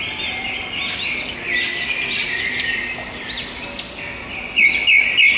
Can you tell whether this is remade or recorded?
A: recorded